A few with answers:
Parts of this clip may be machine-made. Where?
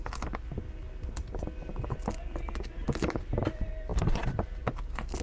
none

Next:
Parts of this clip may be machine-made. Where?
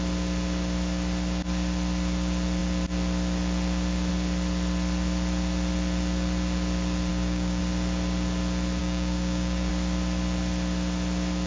7.1-7.6 (codec, DAC); 8.8-9.7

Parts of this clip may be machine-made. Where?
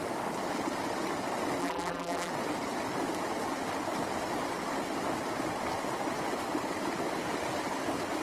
1.6-2.3 (vocoder, BigVGAN v2)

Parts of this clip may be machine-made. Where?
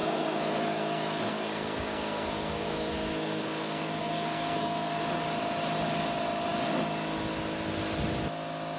0.0-5.0 (codec, SNAC)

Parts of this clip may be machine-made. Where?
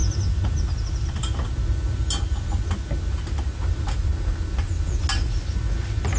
none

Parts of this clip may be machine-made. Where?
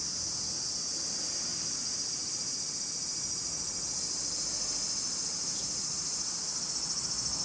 1.5-2.6 (vocoder, BigVGAN v2); 5.5-6.7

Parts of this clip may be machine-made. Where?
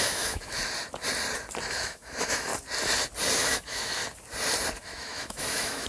0.0-0.6 (autoencoder, DAC-VAE); 1.7-2.5; 3.3-4.0; 4.8-5.9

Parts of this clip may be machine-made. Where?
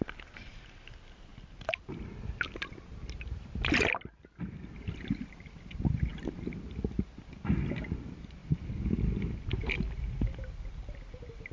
none